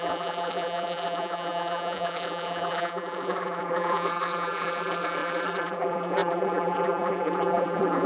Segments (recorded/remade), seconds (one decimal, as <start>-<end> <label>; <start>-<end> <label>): 0.0-8.1 remade